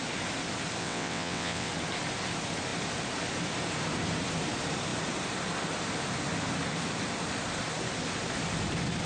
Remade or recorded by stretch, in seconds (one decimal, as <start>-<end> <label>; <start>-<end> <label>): 0.0-0.8 recorded; 0.8-1.7 remade; 1.7-9.1 recorded